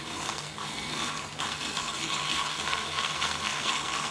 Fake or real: fake